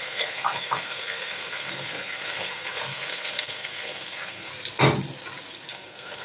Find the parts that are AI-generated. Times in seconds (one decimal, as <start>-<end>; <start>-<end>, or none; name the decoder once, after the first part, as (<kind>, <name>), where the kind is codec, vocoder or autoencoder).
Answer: 0.0-4.5 (codec, SNAC); 5.7-6.2